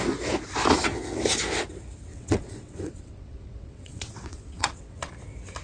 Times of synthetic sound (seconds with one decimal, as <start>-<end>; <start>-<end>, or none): 2.1-5.1